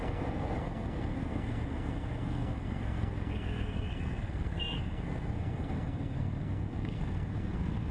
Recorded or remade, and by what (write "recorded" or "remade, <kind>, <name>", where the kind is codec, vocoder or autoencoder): remade, codec, SNAC